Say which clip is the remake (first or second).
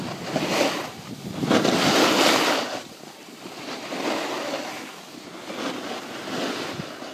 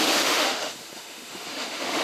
second